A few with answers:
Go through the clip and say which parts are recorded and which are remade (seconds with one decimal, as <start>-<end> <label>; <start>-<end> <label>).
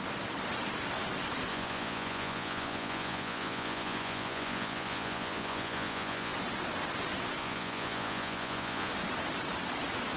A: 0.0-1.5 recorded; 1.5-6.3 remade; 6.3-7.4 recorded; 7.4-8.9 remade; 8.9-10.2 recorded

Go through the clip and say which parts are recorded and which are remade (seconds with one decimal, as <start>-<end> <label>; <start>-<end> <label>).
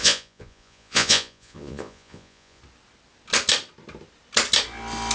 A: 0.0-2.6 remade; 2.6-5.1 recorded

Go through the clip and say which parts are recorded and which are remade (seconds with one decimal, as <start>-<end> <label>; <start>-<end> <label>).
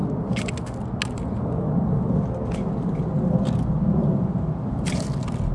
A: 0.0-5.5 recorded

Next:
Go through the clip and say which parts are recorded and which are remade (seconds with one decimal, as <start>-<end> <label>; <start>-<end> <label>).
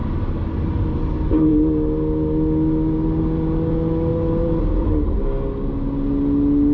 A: 0.0-6.7 recorded